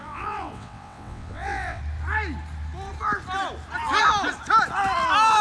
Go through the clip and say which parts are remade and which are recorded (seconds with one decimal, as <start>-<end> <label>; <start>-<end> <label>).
0.0-1.8 remade; 1.8-5.4 recorded